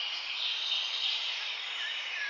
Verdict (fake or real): real